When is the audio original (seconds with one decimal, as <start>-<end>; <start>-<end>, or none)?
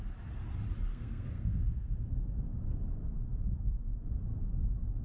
0.0-0.9; 1.9-5.0